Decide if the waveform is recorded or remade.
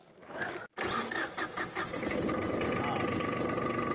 recorded